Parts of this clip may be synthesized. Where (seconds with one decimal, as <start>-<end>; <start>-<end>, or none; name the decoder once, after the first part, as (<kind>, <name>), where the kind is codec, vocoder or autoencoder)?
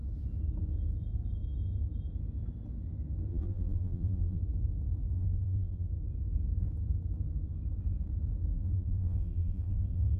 3.3-4.4 (vocoder, BigVGAN v2); 5.1-5.9; 8.5-10.2